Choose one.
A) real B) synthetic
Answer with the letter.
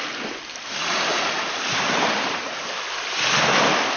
A